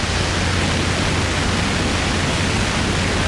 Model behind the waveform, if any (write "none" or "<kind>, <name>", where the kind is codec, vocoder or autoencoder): none